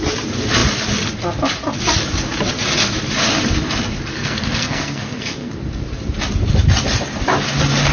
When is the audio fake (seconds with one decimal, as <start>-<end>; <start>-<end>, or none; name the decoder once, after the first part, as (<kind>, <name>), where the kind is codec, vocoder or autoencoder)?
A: 4.1-5.5 (codec, SNAC)